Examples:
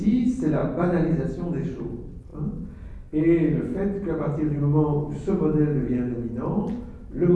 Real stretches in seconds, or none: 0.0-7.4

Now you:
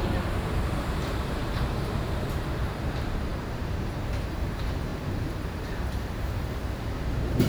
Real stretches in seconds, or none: none

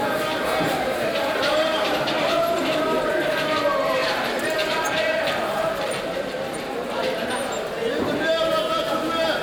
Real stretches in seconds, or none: 0.0-4.0; 7.5-9.4

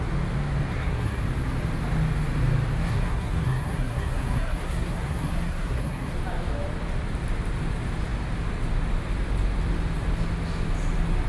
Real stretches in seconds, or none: 0.0-0.7; 1.2-2.8; 6.1-11.3

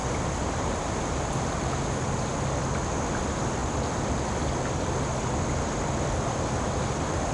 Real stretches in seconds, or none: 0.0-7.3

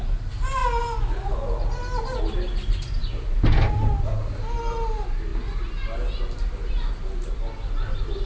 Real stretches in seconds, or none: 0.0-8.3